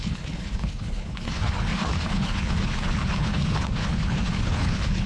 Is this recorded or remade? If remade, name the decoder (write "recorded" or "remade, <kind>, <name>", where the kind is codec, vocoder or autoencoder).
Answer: remade, codec, HILCodec